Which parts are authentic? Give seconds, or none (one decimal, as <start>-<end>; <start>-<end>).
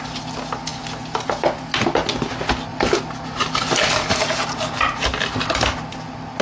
0.0-6.4